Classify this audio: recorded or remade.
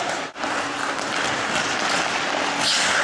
recorded